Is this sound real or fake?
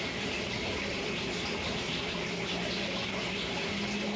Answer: real